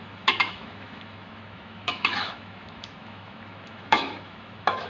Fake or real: fake